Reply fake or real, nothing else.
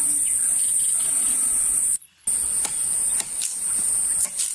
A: real